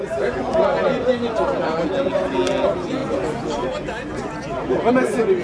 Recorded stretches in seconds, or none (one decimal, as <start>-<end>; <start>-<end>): 0.0-5.4

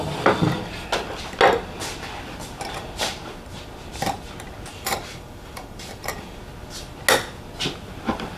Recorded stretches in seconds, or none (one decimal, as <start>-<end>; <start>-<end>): 0.0-4.7; 6.4-8.4

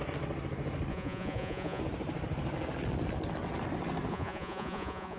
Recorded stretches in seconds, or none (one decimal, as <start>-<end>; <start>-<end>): 0.0-0.9; 1.8-4.1

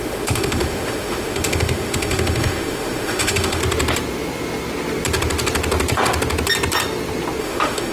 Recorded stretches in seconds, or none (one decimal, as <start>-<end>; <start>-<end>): 3.6-7.4

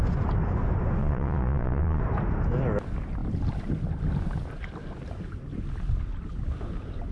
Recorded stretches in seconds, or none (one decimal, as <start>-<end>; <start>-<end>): 0.0-1.0; 2.0-7.1